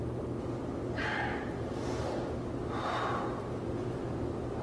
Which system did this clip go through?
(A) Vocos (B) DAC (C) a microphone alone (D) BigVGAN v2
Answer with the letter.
C